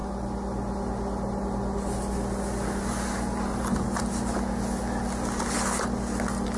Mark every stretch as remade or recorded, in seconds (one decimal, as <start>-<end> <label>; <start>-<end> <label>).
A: 0.0-6.6 recorded